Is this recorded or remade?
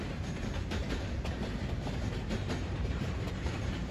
remade